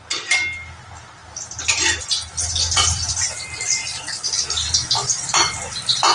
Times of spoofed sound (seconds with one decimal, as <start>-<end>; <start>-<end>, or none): none